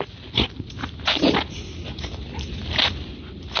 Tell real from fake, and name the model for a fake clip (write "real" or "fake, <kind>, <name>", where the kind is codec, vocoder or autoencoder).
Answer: real